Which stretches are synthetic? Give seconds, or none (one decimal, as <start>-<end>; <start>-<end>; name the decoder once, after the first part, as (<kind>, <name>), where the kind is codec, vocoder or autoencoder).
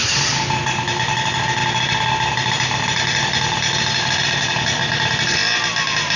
none